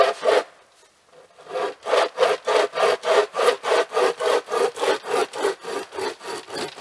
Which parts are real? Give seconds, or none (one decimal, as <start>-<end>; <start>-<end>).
0.0-3.2; 3.8-6.8